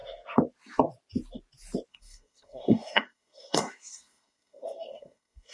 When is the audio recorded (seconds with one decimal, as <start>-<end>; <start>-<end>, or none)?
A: 0.0-1.9